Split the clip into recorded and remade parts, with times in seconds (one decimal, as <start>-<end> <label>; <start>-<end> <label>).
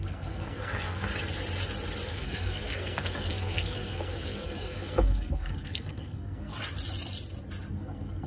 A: 0.0-1.1 remade; 1.1-2.1 recorded; 2.1-6.5 remade; 6.5-7.7 recorded; 7.7-8.3 remade